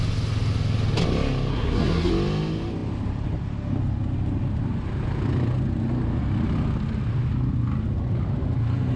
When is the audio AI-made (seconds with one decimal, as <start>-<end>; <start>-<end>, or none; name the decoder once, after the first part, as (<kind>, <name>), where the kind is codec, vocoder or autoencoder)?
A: 1.5-2.1 (codec, SNAC)